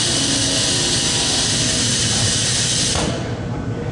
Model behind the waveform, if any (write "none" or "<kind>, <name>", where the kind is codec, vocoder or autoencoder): none